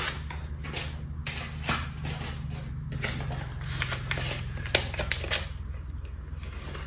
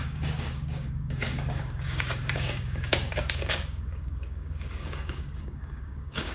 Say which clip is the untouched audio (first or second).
first